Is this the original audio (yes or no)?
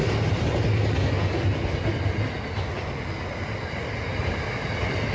yes